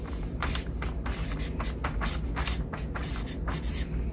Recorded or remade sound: recorded